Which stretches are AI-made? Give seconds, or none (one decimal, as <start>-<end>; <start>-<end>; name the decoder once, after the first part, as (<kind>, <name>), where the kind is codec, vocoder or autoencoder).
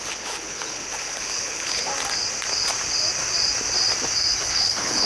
0.0-1.9 (codec, HILCodec); 4.4-5.1